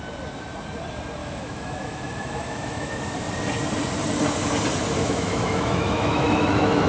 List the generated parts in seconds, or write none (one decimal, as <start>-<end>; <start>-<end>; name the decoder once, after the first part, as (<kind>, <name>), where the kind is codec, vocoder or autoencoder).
1.2-3.1 (autoencoder, DAC-VAE); 5.0-6.9